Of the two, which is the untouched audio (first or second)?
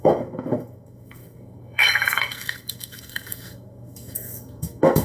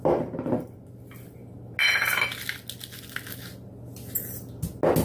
second